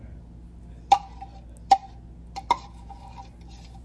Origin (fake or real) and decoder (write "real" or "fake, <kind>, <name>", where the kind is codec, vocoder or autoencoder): real